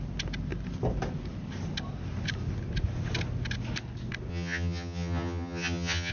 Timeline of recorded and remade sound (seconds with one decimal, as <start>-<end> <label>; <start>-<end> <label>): 0.0-4.3 recorded; 4.3-6.1 remade